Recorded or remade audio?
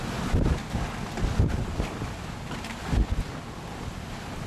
recorded